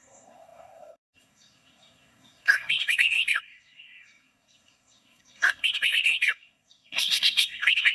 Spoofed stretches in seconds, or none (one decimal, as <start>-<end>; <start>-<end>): 0.0-7.9